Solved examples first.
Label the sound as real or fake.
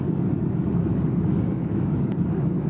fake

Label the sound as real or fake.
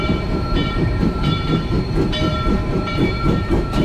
fake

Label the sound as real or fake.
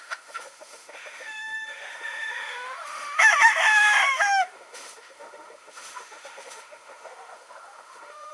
fake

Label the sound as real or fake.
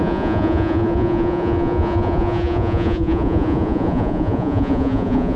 fake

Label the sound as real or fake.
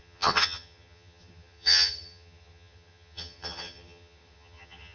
fake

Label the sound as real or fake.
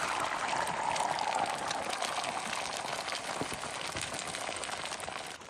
real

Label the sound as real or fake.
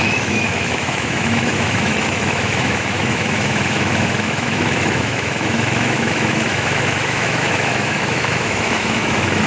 fake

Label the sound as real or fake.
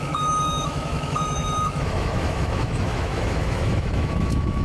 fake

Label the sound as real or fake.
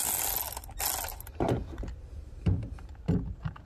real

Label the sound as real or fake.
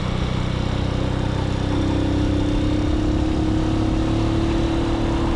real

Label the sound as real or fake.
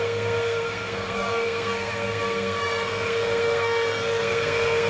fake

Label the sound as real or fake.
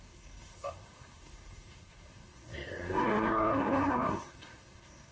fake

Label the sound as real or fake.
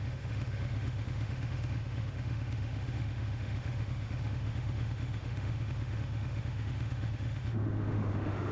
fake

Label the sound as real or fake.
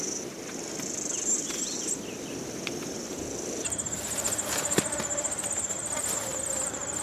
real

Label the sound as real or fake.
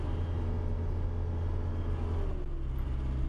real